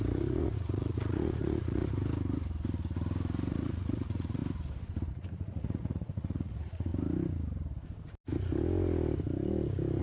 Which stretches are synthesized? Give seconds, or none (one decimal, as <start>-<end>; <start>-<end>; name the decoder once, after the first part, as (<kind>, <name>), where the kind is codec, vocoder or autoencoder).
0.0-1.8 (vocoder, Vocos); 3.5-4.4; 5.1-6.9